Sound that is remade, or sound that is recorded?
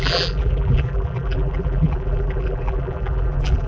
remade